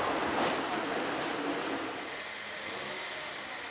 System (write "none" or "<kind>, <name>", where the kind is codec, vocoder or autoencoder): none